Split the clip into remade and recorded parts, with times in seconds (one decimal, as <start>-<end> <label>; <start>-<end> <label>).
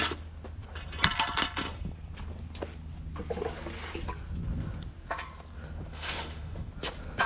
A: 0.0-5.9 recorded; 5.9-6.7 remade; 6.7-7.3 recorded